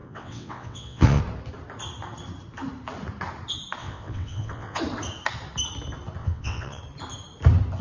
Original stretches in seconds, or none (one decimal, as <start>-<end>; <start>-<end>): 1.2-3.8; 4.8-6.2; 6.8-7.8